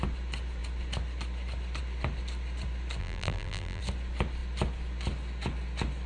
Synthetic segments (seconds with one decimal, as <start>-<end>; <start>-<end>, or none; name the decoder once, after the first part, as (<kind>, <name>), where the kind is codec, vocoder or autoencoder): 3.0-3.8 (vocoder, BigVGAN v2)